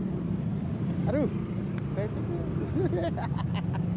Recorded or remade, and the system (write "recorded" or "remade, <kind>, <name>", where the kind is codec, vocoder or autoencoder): recorded